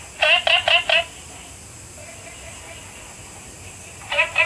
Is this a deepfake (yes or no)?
no